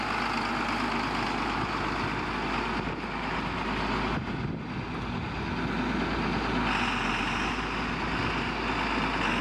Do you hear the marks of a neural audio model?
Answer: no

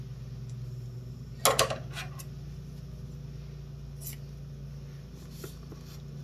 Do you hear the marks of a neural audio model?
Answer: no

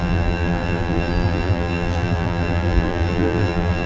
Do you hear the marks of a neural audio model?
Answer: yes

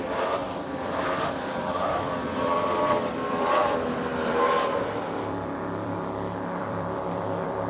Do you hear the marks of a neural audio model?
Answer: yes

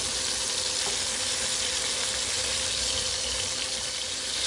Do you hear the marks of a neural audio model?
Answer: no